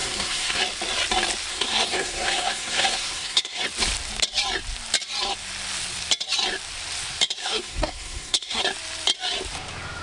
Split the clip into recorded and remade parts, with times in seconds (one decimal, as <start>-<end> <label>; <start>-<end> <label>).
0.0-0.6 remade; 0.6-1.5 recorded; 1.5-3.6 remade; 3.6-7.4 recorded; 7.4-8.6 remade; 8.6-10.0 recorded